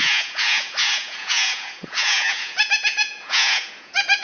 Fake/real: fake